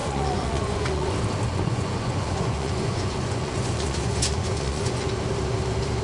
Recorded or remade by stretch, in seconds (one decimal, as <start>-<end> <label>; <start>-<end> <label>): 0.0-1.1 remade; 1.1-1.5 recorded; 1.5-5.1 remade; 5.1-6.0 recorded